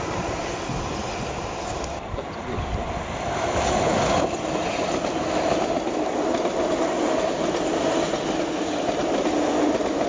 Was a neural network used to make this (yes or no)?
no